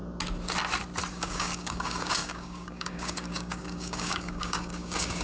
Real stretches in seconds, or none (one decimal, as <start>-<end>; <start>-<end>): 0.0-1.1